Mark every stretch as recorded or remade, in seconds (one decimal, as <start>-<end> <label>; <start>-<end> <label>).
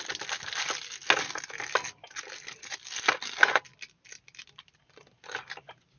0.0-6.0 recorded